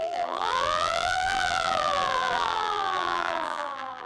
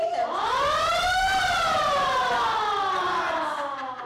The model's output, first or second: first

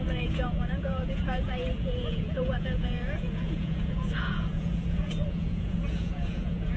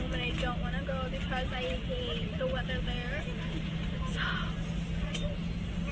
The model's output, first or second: first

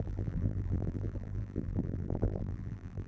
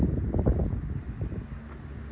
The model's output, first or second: first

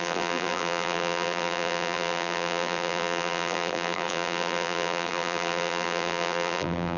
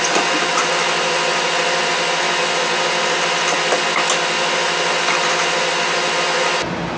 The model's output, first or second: first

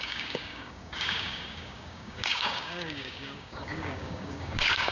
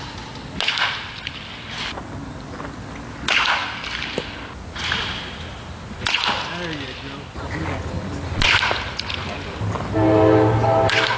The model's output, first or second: first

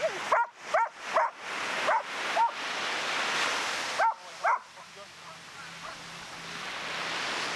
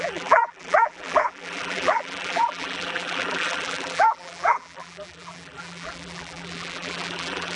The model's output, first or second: second